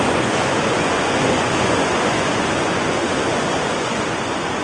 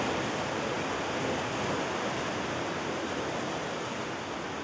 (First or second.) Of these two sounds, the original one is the second